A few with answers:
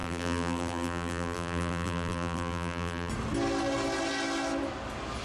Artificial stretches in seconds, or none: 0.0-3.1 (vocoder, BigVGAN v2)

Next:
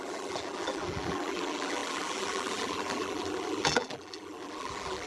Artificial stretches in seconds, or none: 0.0-5.1 (vocoder, BigVGAN v2)

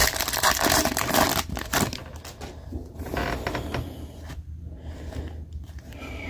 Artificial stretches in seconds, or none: 0.0-1.3 (vocoder, BigVGAN v2)

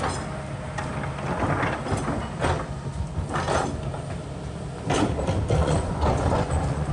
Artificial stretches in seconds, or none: 5.6-6.9 (vocoder, Vocos)

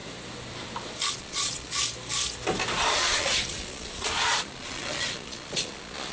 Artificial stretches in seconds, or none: 1.1-1.7 (vocoder, Vocos); 2.9-6.1

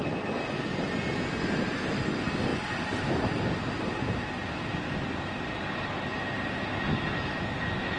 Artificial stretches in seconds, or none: none

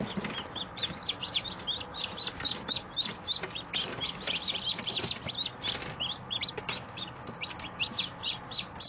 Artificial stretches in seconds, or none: none

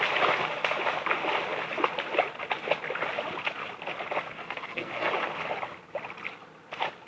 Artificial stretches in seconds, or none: 4.3-5.1 (codec, SNAC)